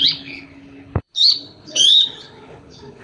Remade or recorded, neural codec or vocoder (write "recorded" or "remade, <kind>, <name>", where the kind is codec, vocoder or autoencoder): remade, codec, HILCodec